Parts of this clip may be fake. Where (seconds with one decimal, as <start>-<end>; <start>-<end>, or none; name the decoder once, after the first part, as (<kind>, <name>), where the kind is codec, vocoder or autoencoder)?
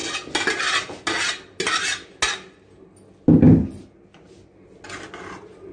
none